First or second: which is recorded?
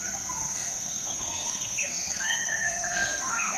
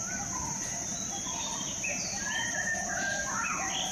second